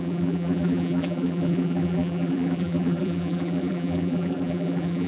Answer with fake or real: fake